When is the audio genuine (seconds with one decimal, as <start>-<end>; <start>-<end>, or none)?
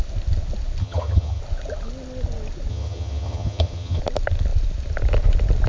0.0-0.8; 1.4-2.7; 4.0-5.7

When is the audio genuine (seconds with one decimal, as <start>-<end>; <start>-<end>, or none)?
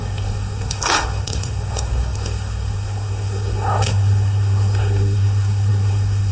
none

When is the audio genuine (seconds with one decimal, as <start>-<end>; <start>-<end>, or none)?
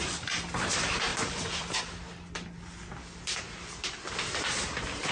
0.0-1.1; 1.8-5.1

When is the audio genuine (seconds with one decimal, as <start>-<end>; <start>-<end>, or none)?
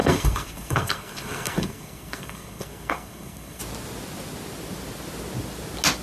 3.6-6.0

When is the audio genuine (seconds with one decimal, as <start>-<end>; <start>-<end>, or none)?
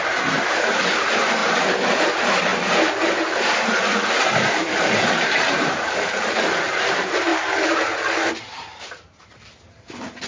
7.3-8.3